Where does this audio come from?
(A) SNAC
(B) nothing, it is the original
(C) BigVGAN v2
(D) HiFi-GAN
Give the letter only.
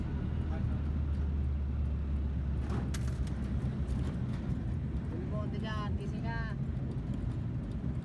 B